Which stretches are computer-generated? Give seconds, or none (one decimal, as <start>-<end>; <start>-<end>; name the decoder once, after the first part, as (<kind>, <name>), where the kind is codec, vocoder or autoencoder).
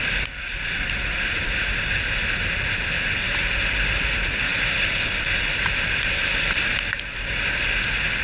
none